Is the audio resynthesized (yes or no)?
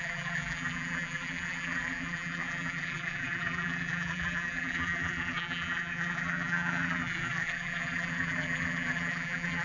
yes